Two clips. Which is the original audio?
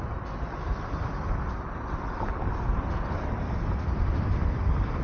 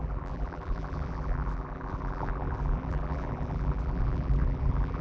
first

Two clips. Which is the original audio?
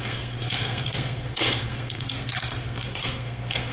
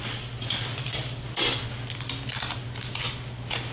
second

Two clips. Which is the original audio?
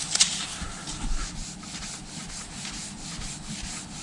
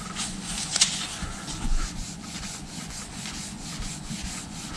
first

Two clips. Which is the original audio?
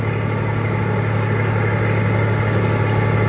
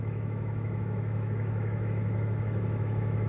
first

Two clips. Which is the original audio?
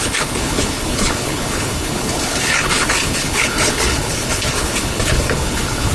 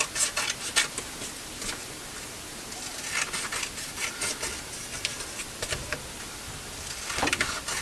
second